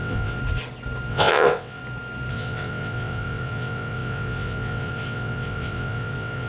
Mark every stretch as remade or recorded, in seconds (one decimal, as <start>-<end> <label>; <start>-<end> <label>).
0.0-0.4 remade; 0.4-1.1 recorded; 1.1-1.8 remade; 1.8-2.3 recorded; 2.3-6.5 remade